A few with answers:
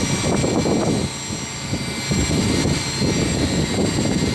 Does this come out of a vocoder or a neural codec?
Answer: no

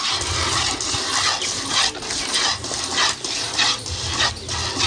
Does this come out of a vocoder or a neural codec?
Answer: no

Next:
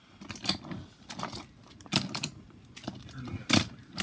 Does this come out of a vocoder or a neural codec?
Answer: no